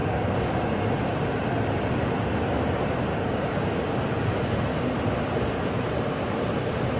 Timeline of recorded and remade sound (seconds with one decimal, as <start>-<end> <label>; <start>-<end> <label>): 0.0-0.5 remade; 0.5-3.1 recorded; 3.1-3.8 remade; 3.8-7.0 recorded